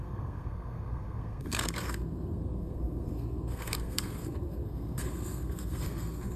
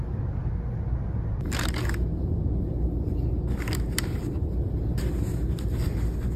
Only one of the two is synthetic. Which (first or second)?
first